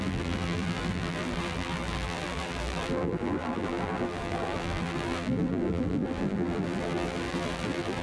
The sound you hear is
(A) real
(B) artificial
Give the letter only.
B